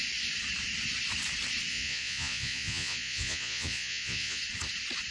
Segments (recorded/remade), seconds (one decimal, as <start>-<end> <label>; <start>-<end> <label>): 0.0-1.7 recorded; 1.7-4.4 remade; 4.4-5.1 recorded